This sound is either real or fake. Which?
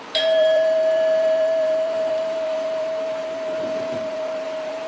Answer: fake